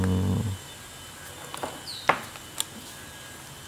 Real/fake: real